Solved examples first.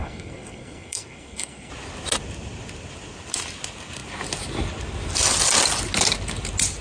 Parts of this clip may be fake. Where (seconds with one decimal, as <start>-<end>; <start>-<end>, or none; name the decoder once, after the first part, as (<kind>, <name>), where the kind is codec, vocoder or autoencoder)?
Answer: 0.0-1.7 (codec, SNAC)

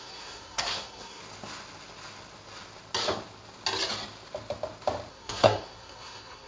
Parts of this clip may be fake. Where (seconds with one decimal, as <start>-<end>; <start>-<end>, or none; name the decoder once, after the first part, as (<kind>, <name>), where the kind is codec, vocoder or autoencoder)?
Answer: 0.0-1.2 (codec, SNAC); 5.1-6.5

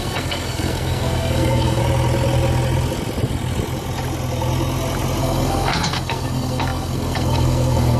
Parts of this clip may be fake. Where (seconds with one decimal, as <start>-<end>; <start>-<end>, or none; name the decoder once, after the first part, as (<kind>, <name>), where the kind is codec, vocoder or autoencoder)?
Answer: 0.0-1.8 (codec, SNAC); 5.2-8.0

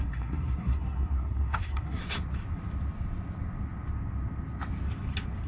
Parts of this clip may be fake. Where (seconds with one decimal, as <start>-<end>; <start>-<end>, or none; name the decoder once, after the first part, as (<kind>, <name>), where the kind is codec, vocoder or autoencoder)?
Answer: 0.0-2.0 (codec, SNAC)